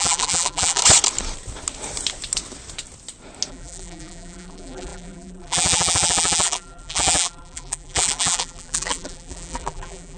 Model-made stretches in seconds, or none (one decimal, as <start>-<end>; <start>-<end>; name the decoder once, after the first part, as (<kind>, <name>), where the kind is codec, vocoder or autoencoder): 0.0-0.8 (vocoder, BigVGAN v2); 3.5-10.2